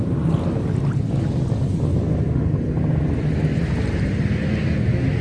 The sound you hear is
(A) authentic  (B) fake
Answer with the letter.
A